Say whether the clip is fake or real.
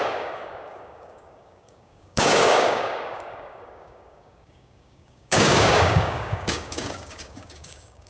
fake